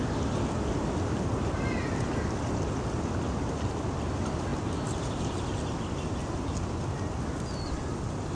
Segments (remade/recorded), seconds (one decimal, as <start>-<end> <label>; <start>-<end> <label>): 0.0-8.3 recorded